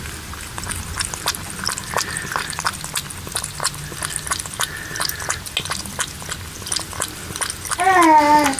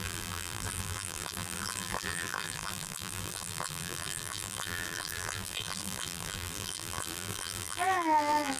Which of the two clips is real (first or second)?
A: first